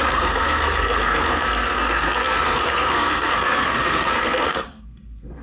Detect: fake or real fake